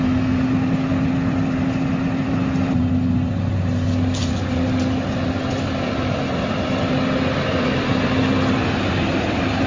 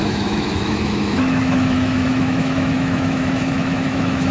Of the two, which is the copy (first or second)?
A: second